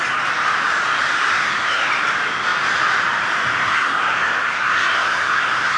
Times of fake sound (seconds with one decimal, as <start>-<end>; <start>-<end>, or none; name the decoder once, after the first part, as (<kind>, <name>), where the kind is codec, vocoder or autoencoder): 1.4-1.9 (codec, SNAC); 3.6-5.8